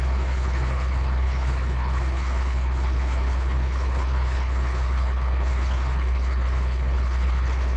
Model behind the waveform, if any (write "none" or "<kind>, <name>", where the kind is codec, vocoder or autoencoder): codec, HILCodec